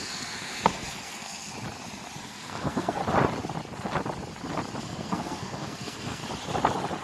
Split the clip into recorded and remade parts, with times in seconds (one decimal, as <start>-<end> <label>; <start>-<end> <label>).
0.0-1.5 remade; 1.5-2.2 recorded; 2.2-3.0 remade; 3.0-4.8 recorded; 4.8-6.2 remade; 6.2-7.0 recorded